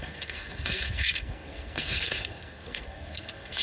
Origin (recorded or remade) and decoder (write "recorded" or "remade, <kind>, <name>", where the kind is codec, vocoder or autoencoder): remade, codec, SNAC